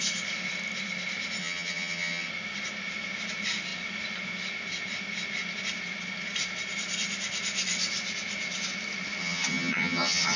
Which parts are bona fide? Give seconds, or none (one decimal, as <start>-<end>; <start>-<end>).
0.0-1.4; 2.3-9.2